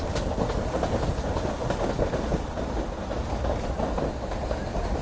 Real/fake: real